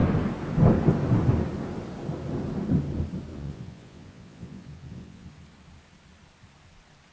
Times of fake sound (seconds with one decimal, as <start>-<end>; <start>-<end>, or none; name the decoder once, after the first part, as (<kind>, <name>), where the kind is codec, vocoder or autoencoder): 3.3-5.3 (vocoder, Vocos)